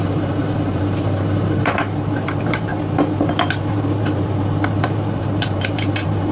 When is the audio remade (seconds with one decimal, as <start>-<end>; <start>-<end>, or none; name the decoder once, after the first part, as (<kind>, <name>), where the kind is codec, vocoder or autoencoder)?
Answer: 0.0-2.7 (vocoder, BigVGAN v2); 3.7-6.3